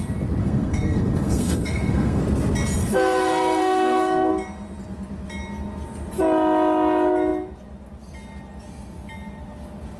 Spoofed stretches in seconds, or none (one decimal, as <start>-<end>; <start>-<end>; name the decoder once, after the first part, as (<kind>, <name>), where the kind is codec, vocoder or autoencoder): 0.4-2.2 (codec, SNAC); 2.8-4.3